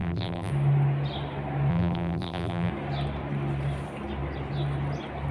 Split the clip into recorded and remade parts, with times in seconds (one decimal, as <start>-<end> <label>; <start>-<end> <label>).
0.0-0.5 remade; 0.5-1.7 recorded; 1.7-2.7 remade; 2.7-5.3 recorded